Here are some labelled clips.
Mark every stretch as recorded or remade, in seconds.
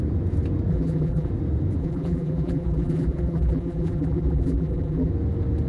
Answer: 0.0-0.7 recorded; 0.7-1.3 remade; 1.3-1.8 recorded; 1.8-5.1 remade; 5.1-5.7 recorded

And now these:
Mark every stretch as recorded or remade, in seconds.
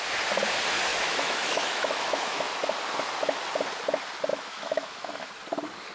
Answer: 0.0-0.9 recorded; 0.9-2.5 remade; 2.5-4.3 recorded; 4.3-5.3 remade; 5.3-5.9 recorded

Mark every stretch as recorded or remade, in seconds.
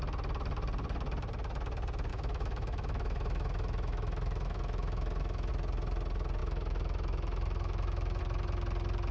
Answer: 0.0-2.1 recorded; 2.1-5.5 remade; 5.5-6.4 recorded; 6.4-8.2 remade; 8.2-9.1 recorded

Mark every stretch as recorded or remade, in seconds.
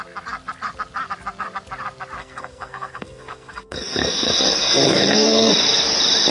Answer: 0.0-2.2 recorded; 2.2-5.5 remade; 5.5-6.3 recorded